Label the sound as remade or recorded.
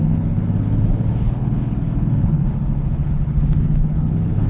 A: remade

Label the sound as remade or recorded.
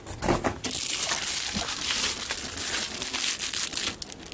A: recorded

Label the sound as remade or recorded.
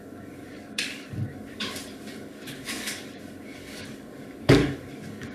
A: remade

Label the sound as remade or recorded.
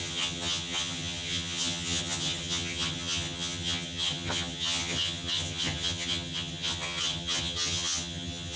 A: remade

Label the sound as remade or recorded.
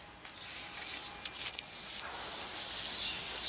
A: recorded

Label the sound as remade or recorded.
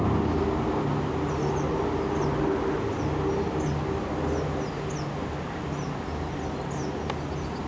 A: recorded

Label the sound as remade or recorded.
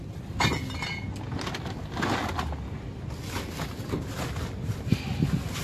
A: recorded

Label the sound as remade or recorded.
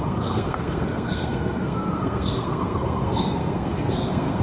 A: remade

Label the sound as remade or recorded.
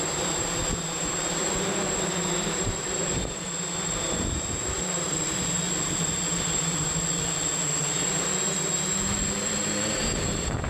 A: remade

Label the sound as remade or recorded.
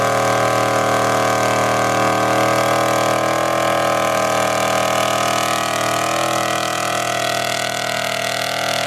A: recorded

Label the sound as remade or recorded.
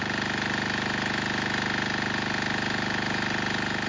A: recorded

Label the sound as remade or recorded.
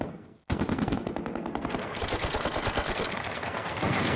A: remade